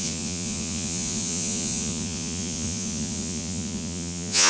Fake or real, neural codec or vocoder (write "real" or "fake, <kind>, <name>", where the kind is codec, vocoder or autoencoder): fake, vocoder, Vocos